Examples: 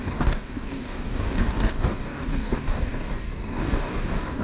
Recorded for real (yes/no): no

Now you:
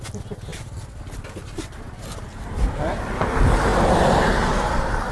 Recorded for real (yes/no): yes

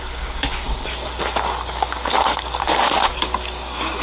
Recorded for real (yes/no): no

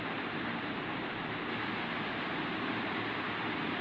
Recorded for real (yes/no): yes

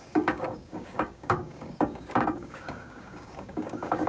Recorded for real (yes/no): no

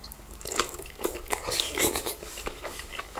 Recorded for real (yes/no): no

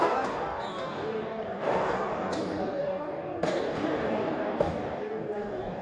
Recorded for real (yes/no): no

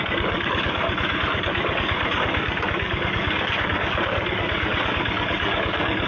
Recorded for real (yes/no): no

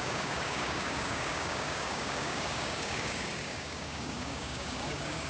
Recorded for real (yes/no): no